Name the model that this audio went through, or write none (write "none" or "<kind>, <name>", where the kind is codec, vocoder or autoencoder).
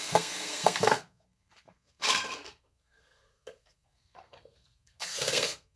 codec, SNAC